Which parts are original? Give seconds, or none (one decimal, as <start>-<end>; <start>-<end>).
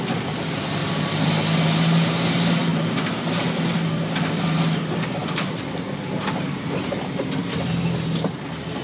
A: 0.0-8.8